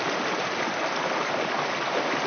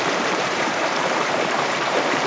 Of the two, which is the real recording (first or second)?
first